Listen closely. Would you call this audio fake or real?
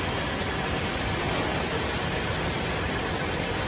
real